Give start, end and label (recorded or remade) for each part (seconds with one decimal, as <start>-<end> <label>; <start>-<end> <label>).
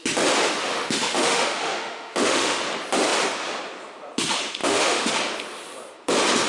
0.0-0.7 recorded; 0.7-2.6 remade; 2.6-4.6 recorded; 4.6-5.1 remade; 5.1-6.5 recorded